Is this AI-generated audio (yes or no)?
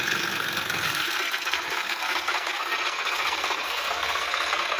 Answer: yes